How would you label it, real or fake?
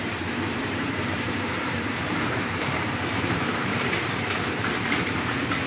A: fake